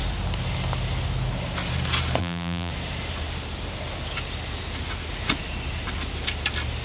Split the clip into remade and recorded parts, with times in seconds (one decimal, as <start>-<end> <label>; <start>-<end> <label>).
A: 0.0-2.2 recorded; 2.2-2.7 remade; 2.7-6.8 recorded